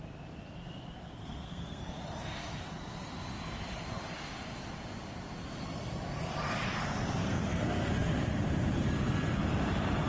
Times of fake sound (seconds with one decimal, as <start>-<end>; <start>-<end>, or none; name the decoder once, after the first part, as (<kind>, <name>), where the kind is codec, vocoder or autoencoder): 1.2-1.8 (codec, SNAC); 7.2-7.9